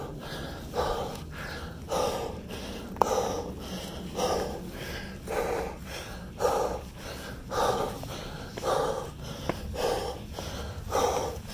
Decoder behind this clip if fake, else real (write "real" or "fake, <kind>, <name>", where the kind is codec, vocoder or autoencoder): real